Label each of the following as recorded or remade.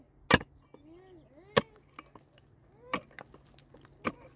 recorded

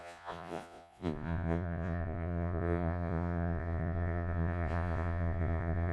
remade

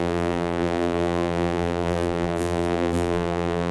remade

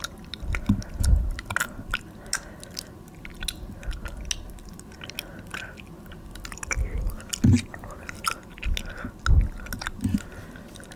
recorded